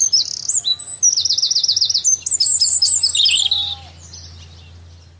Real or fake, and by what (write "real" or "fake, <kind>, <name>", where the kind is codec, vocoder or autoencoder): real